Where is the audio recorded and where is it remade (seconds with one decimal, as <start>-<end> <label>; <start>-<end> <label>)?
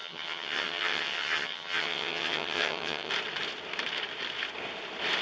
0.0-3.1 remade; 3.1-5.2 recorded